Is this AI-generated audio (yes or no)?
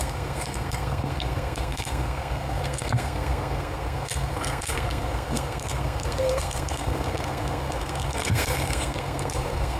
yes